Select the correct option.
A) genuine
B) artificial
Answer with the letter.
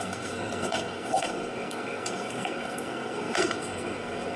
B